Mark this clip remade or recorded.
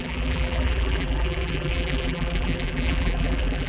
remade